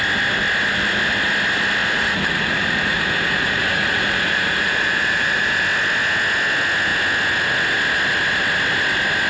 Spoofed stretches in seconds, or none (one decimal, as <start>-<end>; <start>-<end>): 1.8-5.6